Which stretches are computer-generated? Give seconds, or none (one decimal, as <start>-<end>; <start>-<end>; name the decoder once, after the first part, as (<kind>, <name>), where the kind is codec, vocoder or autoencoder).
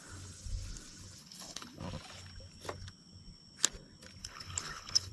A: 1.2-1.8 (codec, HILCodec); 4.2-5.1